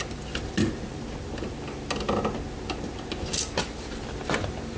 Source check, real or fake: real